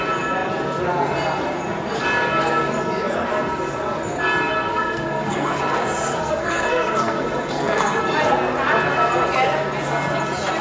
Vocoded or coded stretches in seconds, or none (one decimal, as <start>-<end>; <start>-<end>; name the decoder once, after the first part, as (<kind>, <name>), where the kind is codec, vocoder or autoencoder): 4.7-5.6 (codec, SNAC); 6.2-8.0